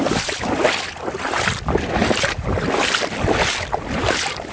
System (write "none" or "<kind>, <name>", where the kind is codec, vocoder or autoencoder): none